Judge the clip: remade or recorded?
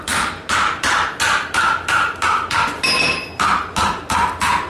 recorded